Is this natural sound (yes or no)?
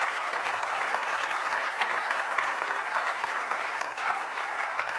no